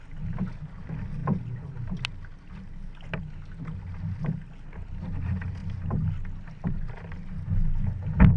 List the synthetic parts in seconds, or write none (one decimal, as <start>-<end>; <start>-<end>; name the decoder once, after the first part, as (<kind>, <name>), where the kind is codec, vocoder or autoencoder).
none